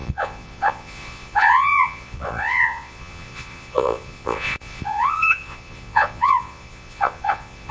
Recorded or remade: remade